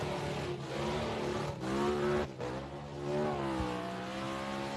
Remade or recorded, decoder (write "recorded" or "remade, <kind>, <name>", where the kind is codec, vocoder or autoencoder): recorded